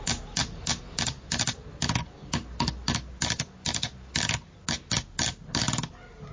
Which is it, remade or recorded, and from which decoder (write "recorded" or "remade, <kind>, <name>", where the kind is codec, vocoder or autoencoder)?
recorded